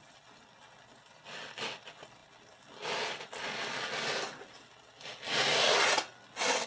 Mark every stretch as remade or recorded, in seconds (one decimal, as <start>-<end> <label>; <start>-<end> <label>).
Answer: 0.0-6.7 recorded